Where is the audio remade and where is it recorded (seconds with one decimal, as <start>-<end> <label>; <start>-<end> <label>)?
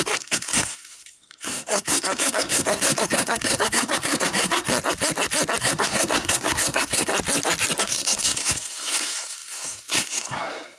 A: 0.0-4.7 remade; 4.7-5.6 recorded; 5.6-7.1 remade; 7.1-7.8 recorded; 7.8-10.8 remade